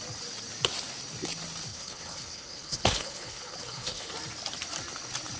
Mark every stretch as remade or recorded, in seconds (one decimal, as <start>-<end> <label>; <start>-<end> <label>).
0.0-1.7 recorded; 1.7-4.1 remade; 4.1-5.4 recorded